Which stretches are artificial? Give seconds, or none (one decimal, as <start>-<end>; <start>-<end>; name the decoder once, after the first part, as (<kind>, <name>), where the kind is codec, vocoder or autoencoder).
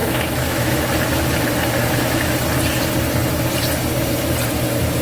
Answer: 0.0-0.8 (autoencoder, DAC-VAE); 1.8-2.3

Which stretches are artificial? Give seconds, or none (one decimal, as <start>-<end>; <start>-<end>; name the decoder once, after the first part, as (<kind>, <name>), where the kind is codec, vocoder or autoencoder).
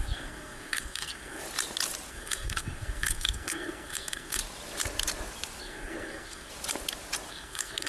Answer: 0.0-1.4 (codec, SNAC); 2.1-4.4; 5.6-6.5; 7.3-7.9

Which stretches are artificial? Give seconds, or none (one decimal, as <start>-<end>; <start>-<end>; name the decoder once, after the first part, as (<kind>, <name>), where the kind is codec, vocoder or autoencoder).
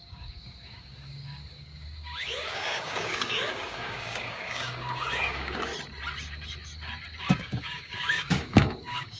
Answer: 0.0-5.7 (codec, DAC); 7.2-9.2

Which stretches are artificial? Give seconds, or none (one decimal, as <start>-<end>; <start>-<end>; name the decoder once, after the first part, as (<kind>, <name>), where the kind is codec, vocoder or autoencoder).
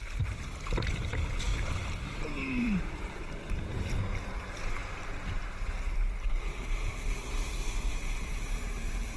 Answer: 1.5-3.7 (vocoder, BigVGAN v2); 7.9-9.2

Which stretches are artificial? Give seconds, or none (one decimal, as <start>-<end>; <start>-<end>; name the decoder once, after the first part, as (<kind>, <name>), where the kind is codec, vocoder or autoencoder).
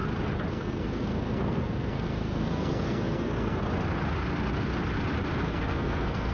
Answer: 0.5-3.6 (codec, SNAC); 5.4-6.3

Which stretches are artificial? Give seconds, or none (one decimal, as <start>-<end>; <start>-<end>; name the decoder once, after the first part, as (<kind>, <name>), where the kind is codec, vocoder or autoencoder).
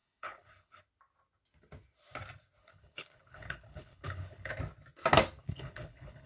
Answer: 0.0-0.8 (codec, HILCodec); 2.6-4.5; 5.4-6.3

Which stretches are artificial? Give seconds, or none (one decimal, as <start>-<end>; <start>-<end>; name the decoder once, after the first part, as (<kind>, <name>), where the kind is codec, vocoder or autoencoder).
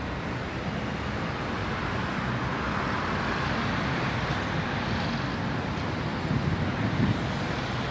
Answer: 1.6-4.9 (vocoder, BigVGAN v2); 6.1-6.9